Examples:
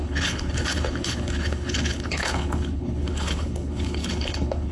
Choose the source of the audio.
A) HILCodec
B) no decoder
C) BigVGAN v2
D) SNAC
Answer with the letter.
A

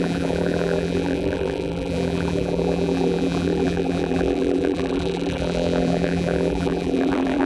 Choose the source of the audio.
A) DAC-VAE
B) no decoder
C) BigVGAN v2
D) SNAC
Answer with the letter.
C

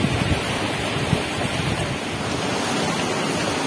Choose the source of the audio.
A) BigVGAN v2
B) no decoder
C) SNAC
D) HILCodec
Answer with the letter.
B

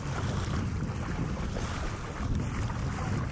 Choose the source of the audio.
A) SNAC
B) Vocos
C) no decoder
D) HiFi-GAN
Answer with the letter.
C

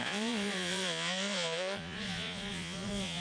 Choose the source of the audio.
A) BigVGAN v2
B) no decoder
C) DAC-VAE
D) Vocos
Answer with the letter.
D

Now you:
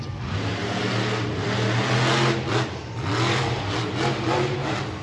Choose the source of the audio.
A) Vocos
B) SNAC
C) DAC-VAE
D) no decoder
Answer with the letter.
D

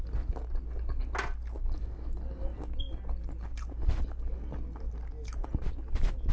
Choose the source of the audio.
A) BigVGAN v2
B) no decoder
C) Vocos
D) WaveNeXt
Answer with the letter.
B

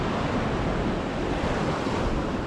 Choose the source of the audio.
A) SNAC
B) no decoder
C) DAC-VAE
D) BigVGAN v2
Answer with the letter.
B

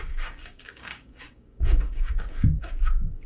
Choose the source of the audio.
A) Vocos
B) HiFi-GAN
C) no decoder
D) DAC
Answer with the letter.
D